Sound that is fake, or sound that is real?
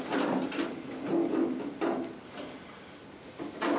real